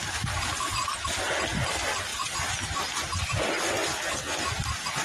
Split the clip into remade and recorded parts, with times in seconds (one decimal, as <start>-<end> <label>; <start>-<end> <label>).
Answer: 0.0-5.0 recorded

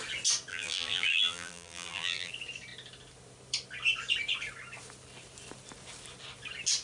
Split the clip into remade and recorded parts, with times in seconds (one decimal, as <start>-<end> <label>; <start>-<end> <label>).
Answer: 0.0-0.5 recorded; 0.5-2.3 remade; 2.3-6.8 recorded

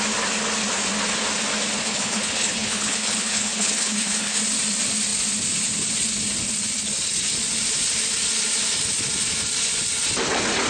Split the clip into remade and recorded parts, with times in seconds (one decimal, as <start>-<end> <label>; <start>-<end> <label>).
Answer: 0.0-1.8 recorded; 1.8-4.4 remade; 4.4-10.7 recorded

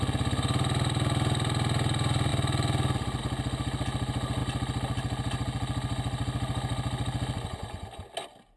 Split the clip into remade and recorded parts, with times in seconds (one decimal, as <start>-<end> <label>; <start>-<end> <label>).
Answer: 0.0-8.6 recorded

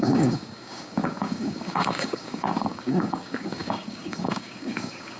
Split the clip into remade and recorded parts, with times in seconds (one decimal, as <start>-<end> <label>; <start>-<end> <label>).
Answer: 0.0-5.2 remade

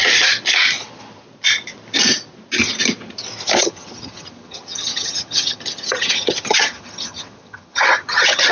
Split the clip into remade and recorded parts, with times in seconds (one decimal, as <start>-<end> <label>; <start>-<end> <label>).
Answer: 0.0-3.6 recorded; 3.6-8.5 remade

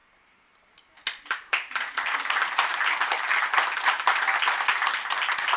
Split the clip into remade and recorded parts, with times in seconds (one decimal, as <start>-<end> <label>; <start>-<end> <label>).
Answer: 0.0-5.6 recorded